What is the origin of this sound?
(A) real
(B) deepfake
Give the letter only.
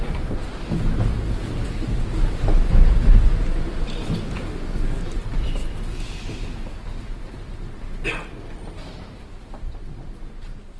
A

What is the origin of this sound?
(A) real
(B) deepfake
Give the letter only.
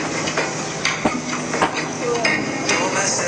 A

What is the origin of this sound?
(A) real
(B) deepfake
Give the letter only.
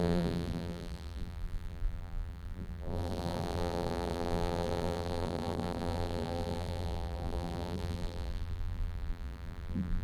B